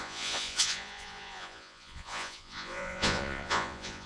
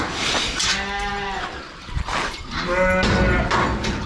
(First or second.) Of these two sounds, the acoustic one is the second